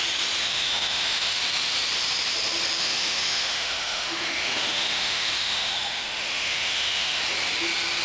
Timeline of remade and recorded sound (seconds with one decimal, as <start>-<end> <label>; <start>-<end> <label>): 0.0-0.4 recorded; 0.4-1.4 remade; 1.4-2.8 recorded; 2.8-7.2 remade; 7.2-8.0 recorded